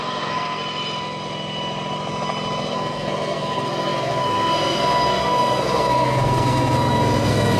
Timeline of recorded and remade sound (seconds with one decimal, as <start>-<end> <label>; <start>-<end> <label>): 0.0-0.6 remade; 0.6-2.7 recorded; 2.7-7.6 remade